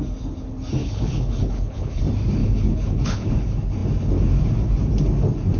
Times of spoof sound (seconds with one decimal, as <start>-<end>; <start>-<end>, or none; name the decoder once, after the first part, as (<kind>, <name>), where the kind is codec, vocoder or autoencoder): 0.8-2.0 (codec, HILCodec); 2.4-3.3